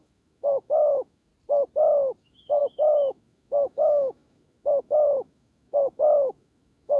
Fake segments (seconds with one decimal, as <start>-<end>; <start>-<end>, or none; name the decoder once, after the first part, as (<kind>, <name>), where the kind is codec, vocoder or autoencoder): 0.0-1.3 (autoencoder, DAC-VAE); 2.2-7.0